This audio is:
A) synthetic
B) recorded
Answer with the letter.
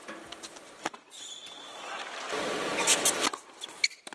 B